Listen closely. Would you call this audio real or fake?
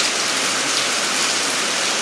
real